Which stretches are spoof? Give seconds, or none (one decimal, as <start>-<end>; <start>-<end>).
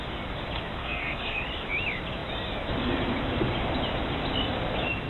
0.8-1.4